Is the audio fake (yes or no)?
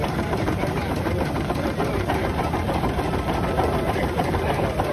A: yes